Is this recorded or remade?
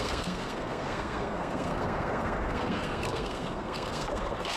remade